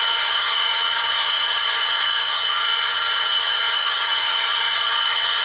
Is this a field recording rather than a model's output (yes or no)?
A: no